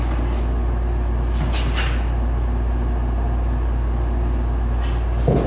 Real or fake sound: real